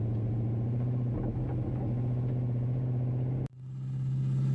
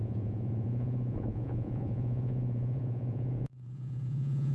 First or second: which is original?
first